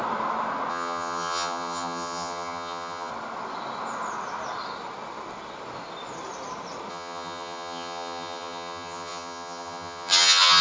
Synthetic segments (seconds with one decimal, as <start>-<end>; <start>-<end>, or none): 0.7-3.1; 6.9-10.6